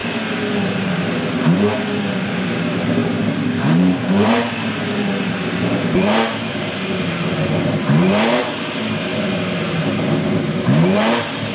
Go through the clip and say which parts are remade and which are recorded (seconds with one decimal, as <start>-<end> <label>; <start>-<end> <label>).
0.0-0.6 recorded; 0.6-9.1 remade; 9.1-9.7 recorded; 9.7-11.5 remade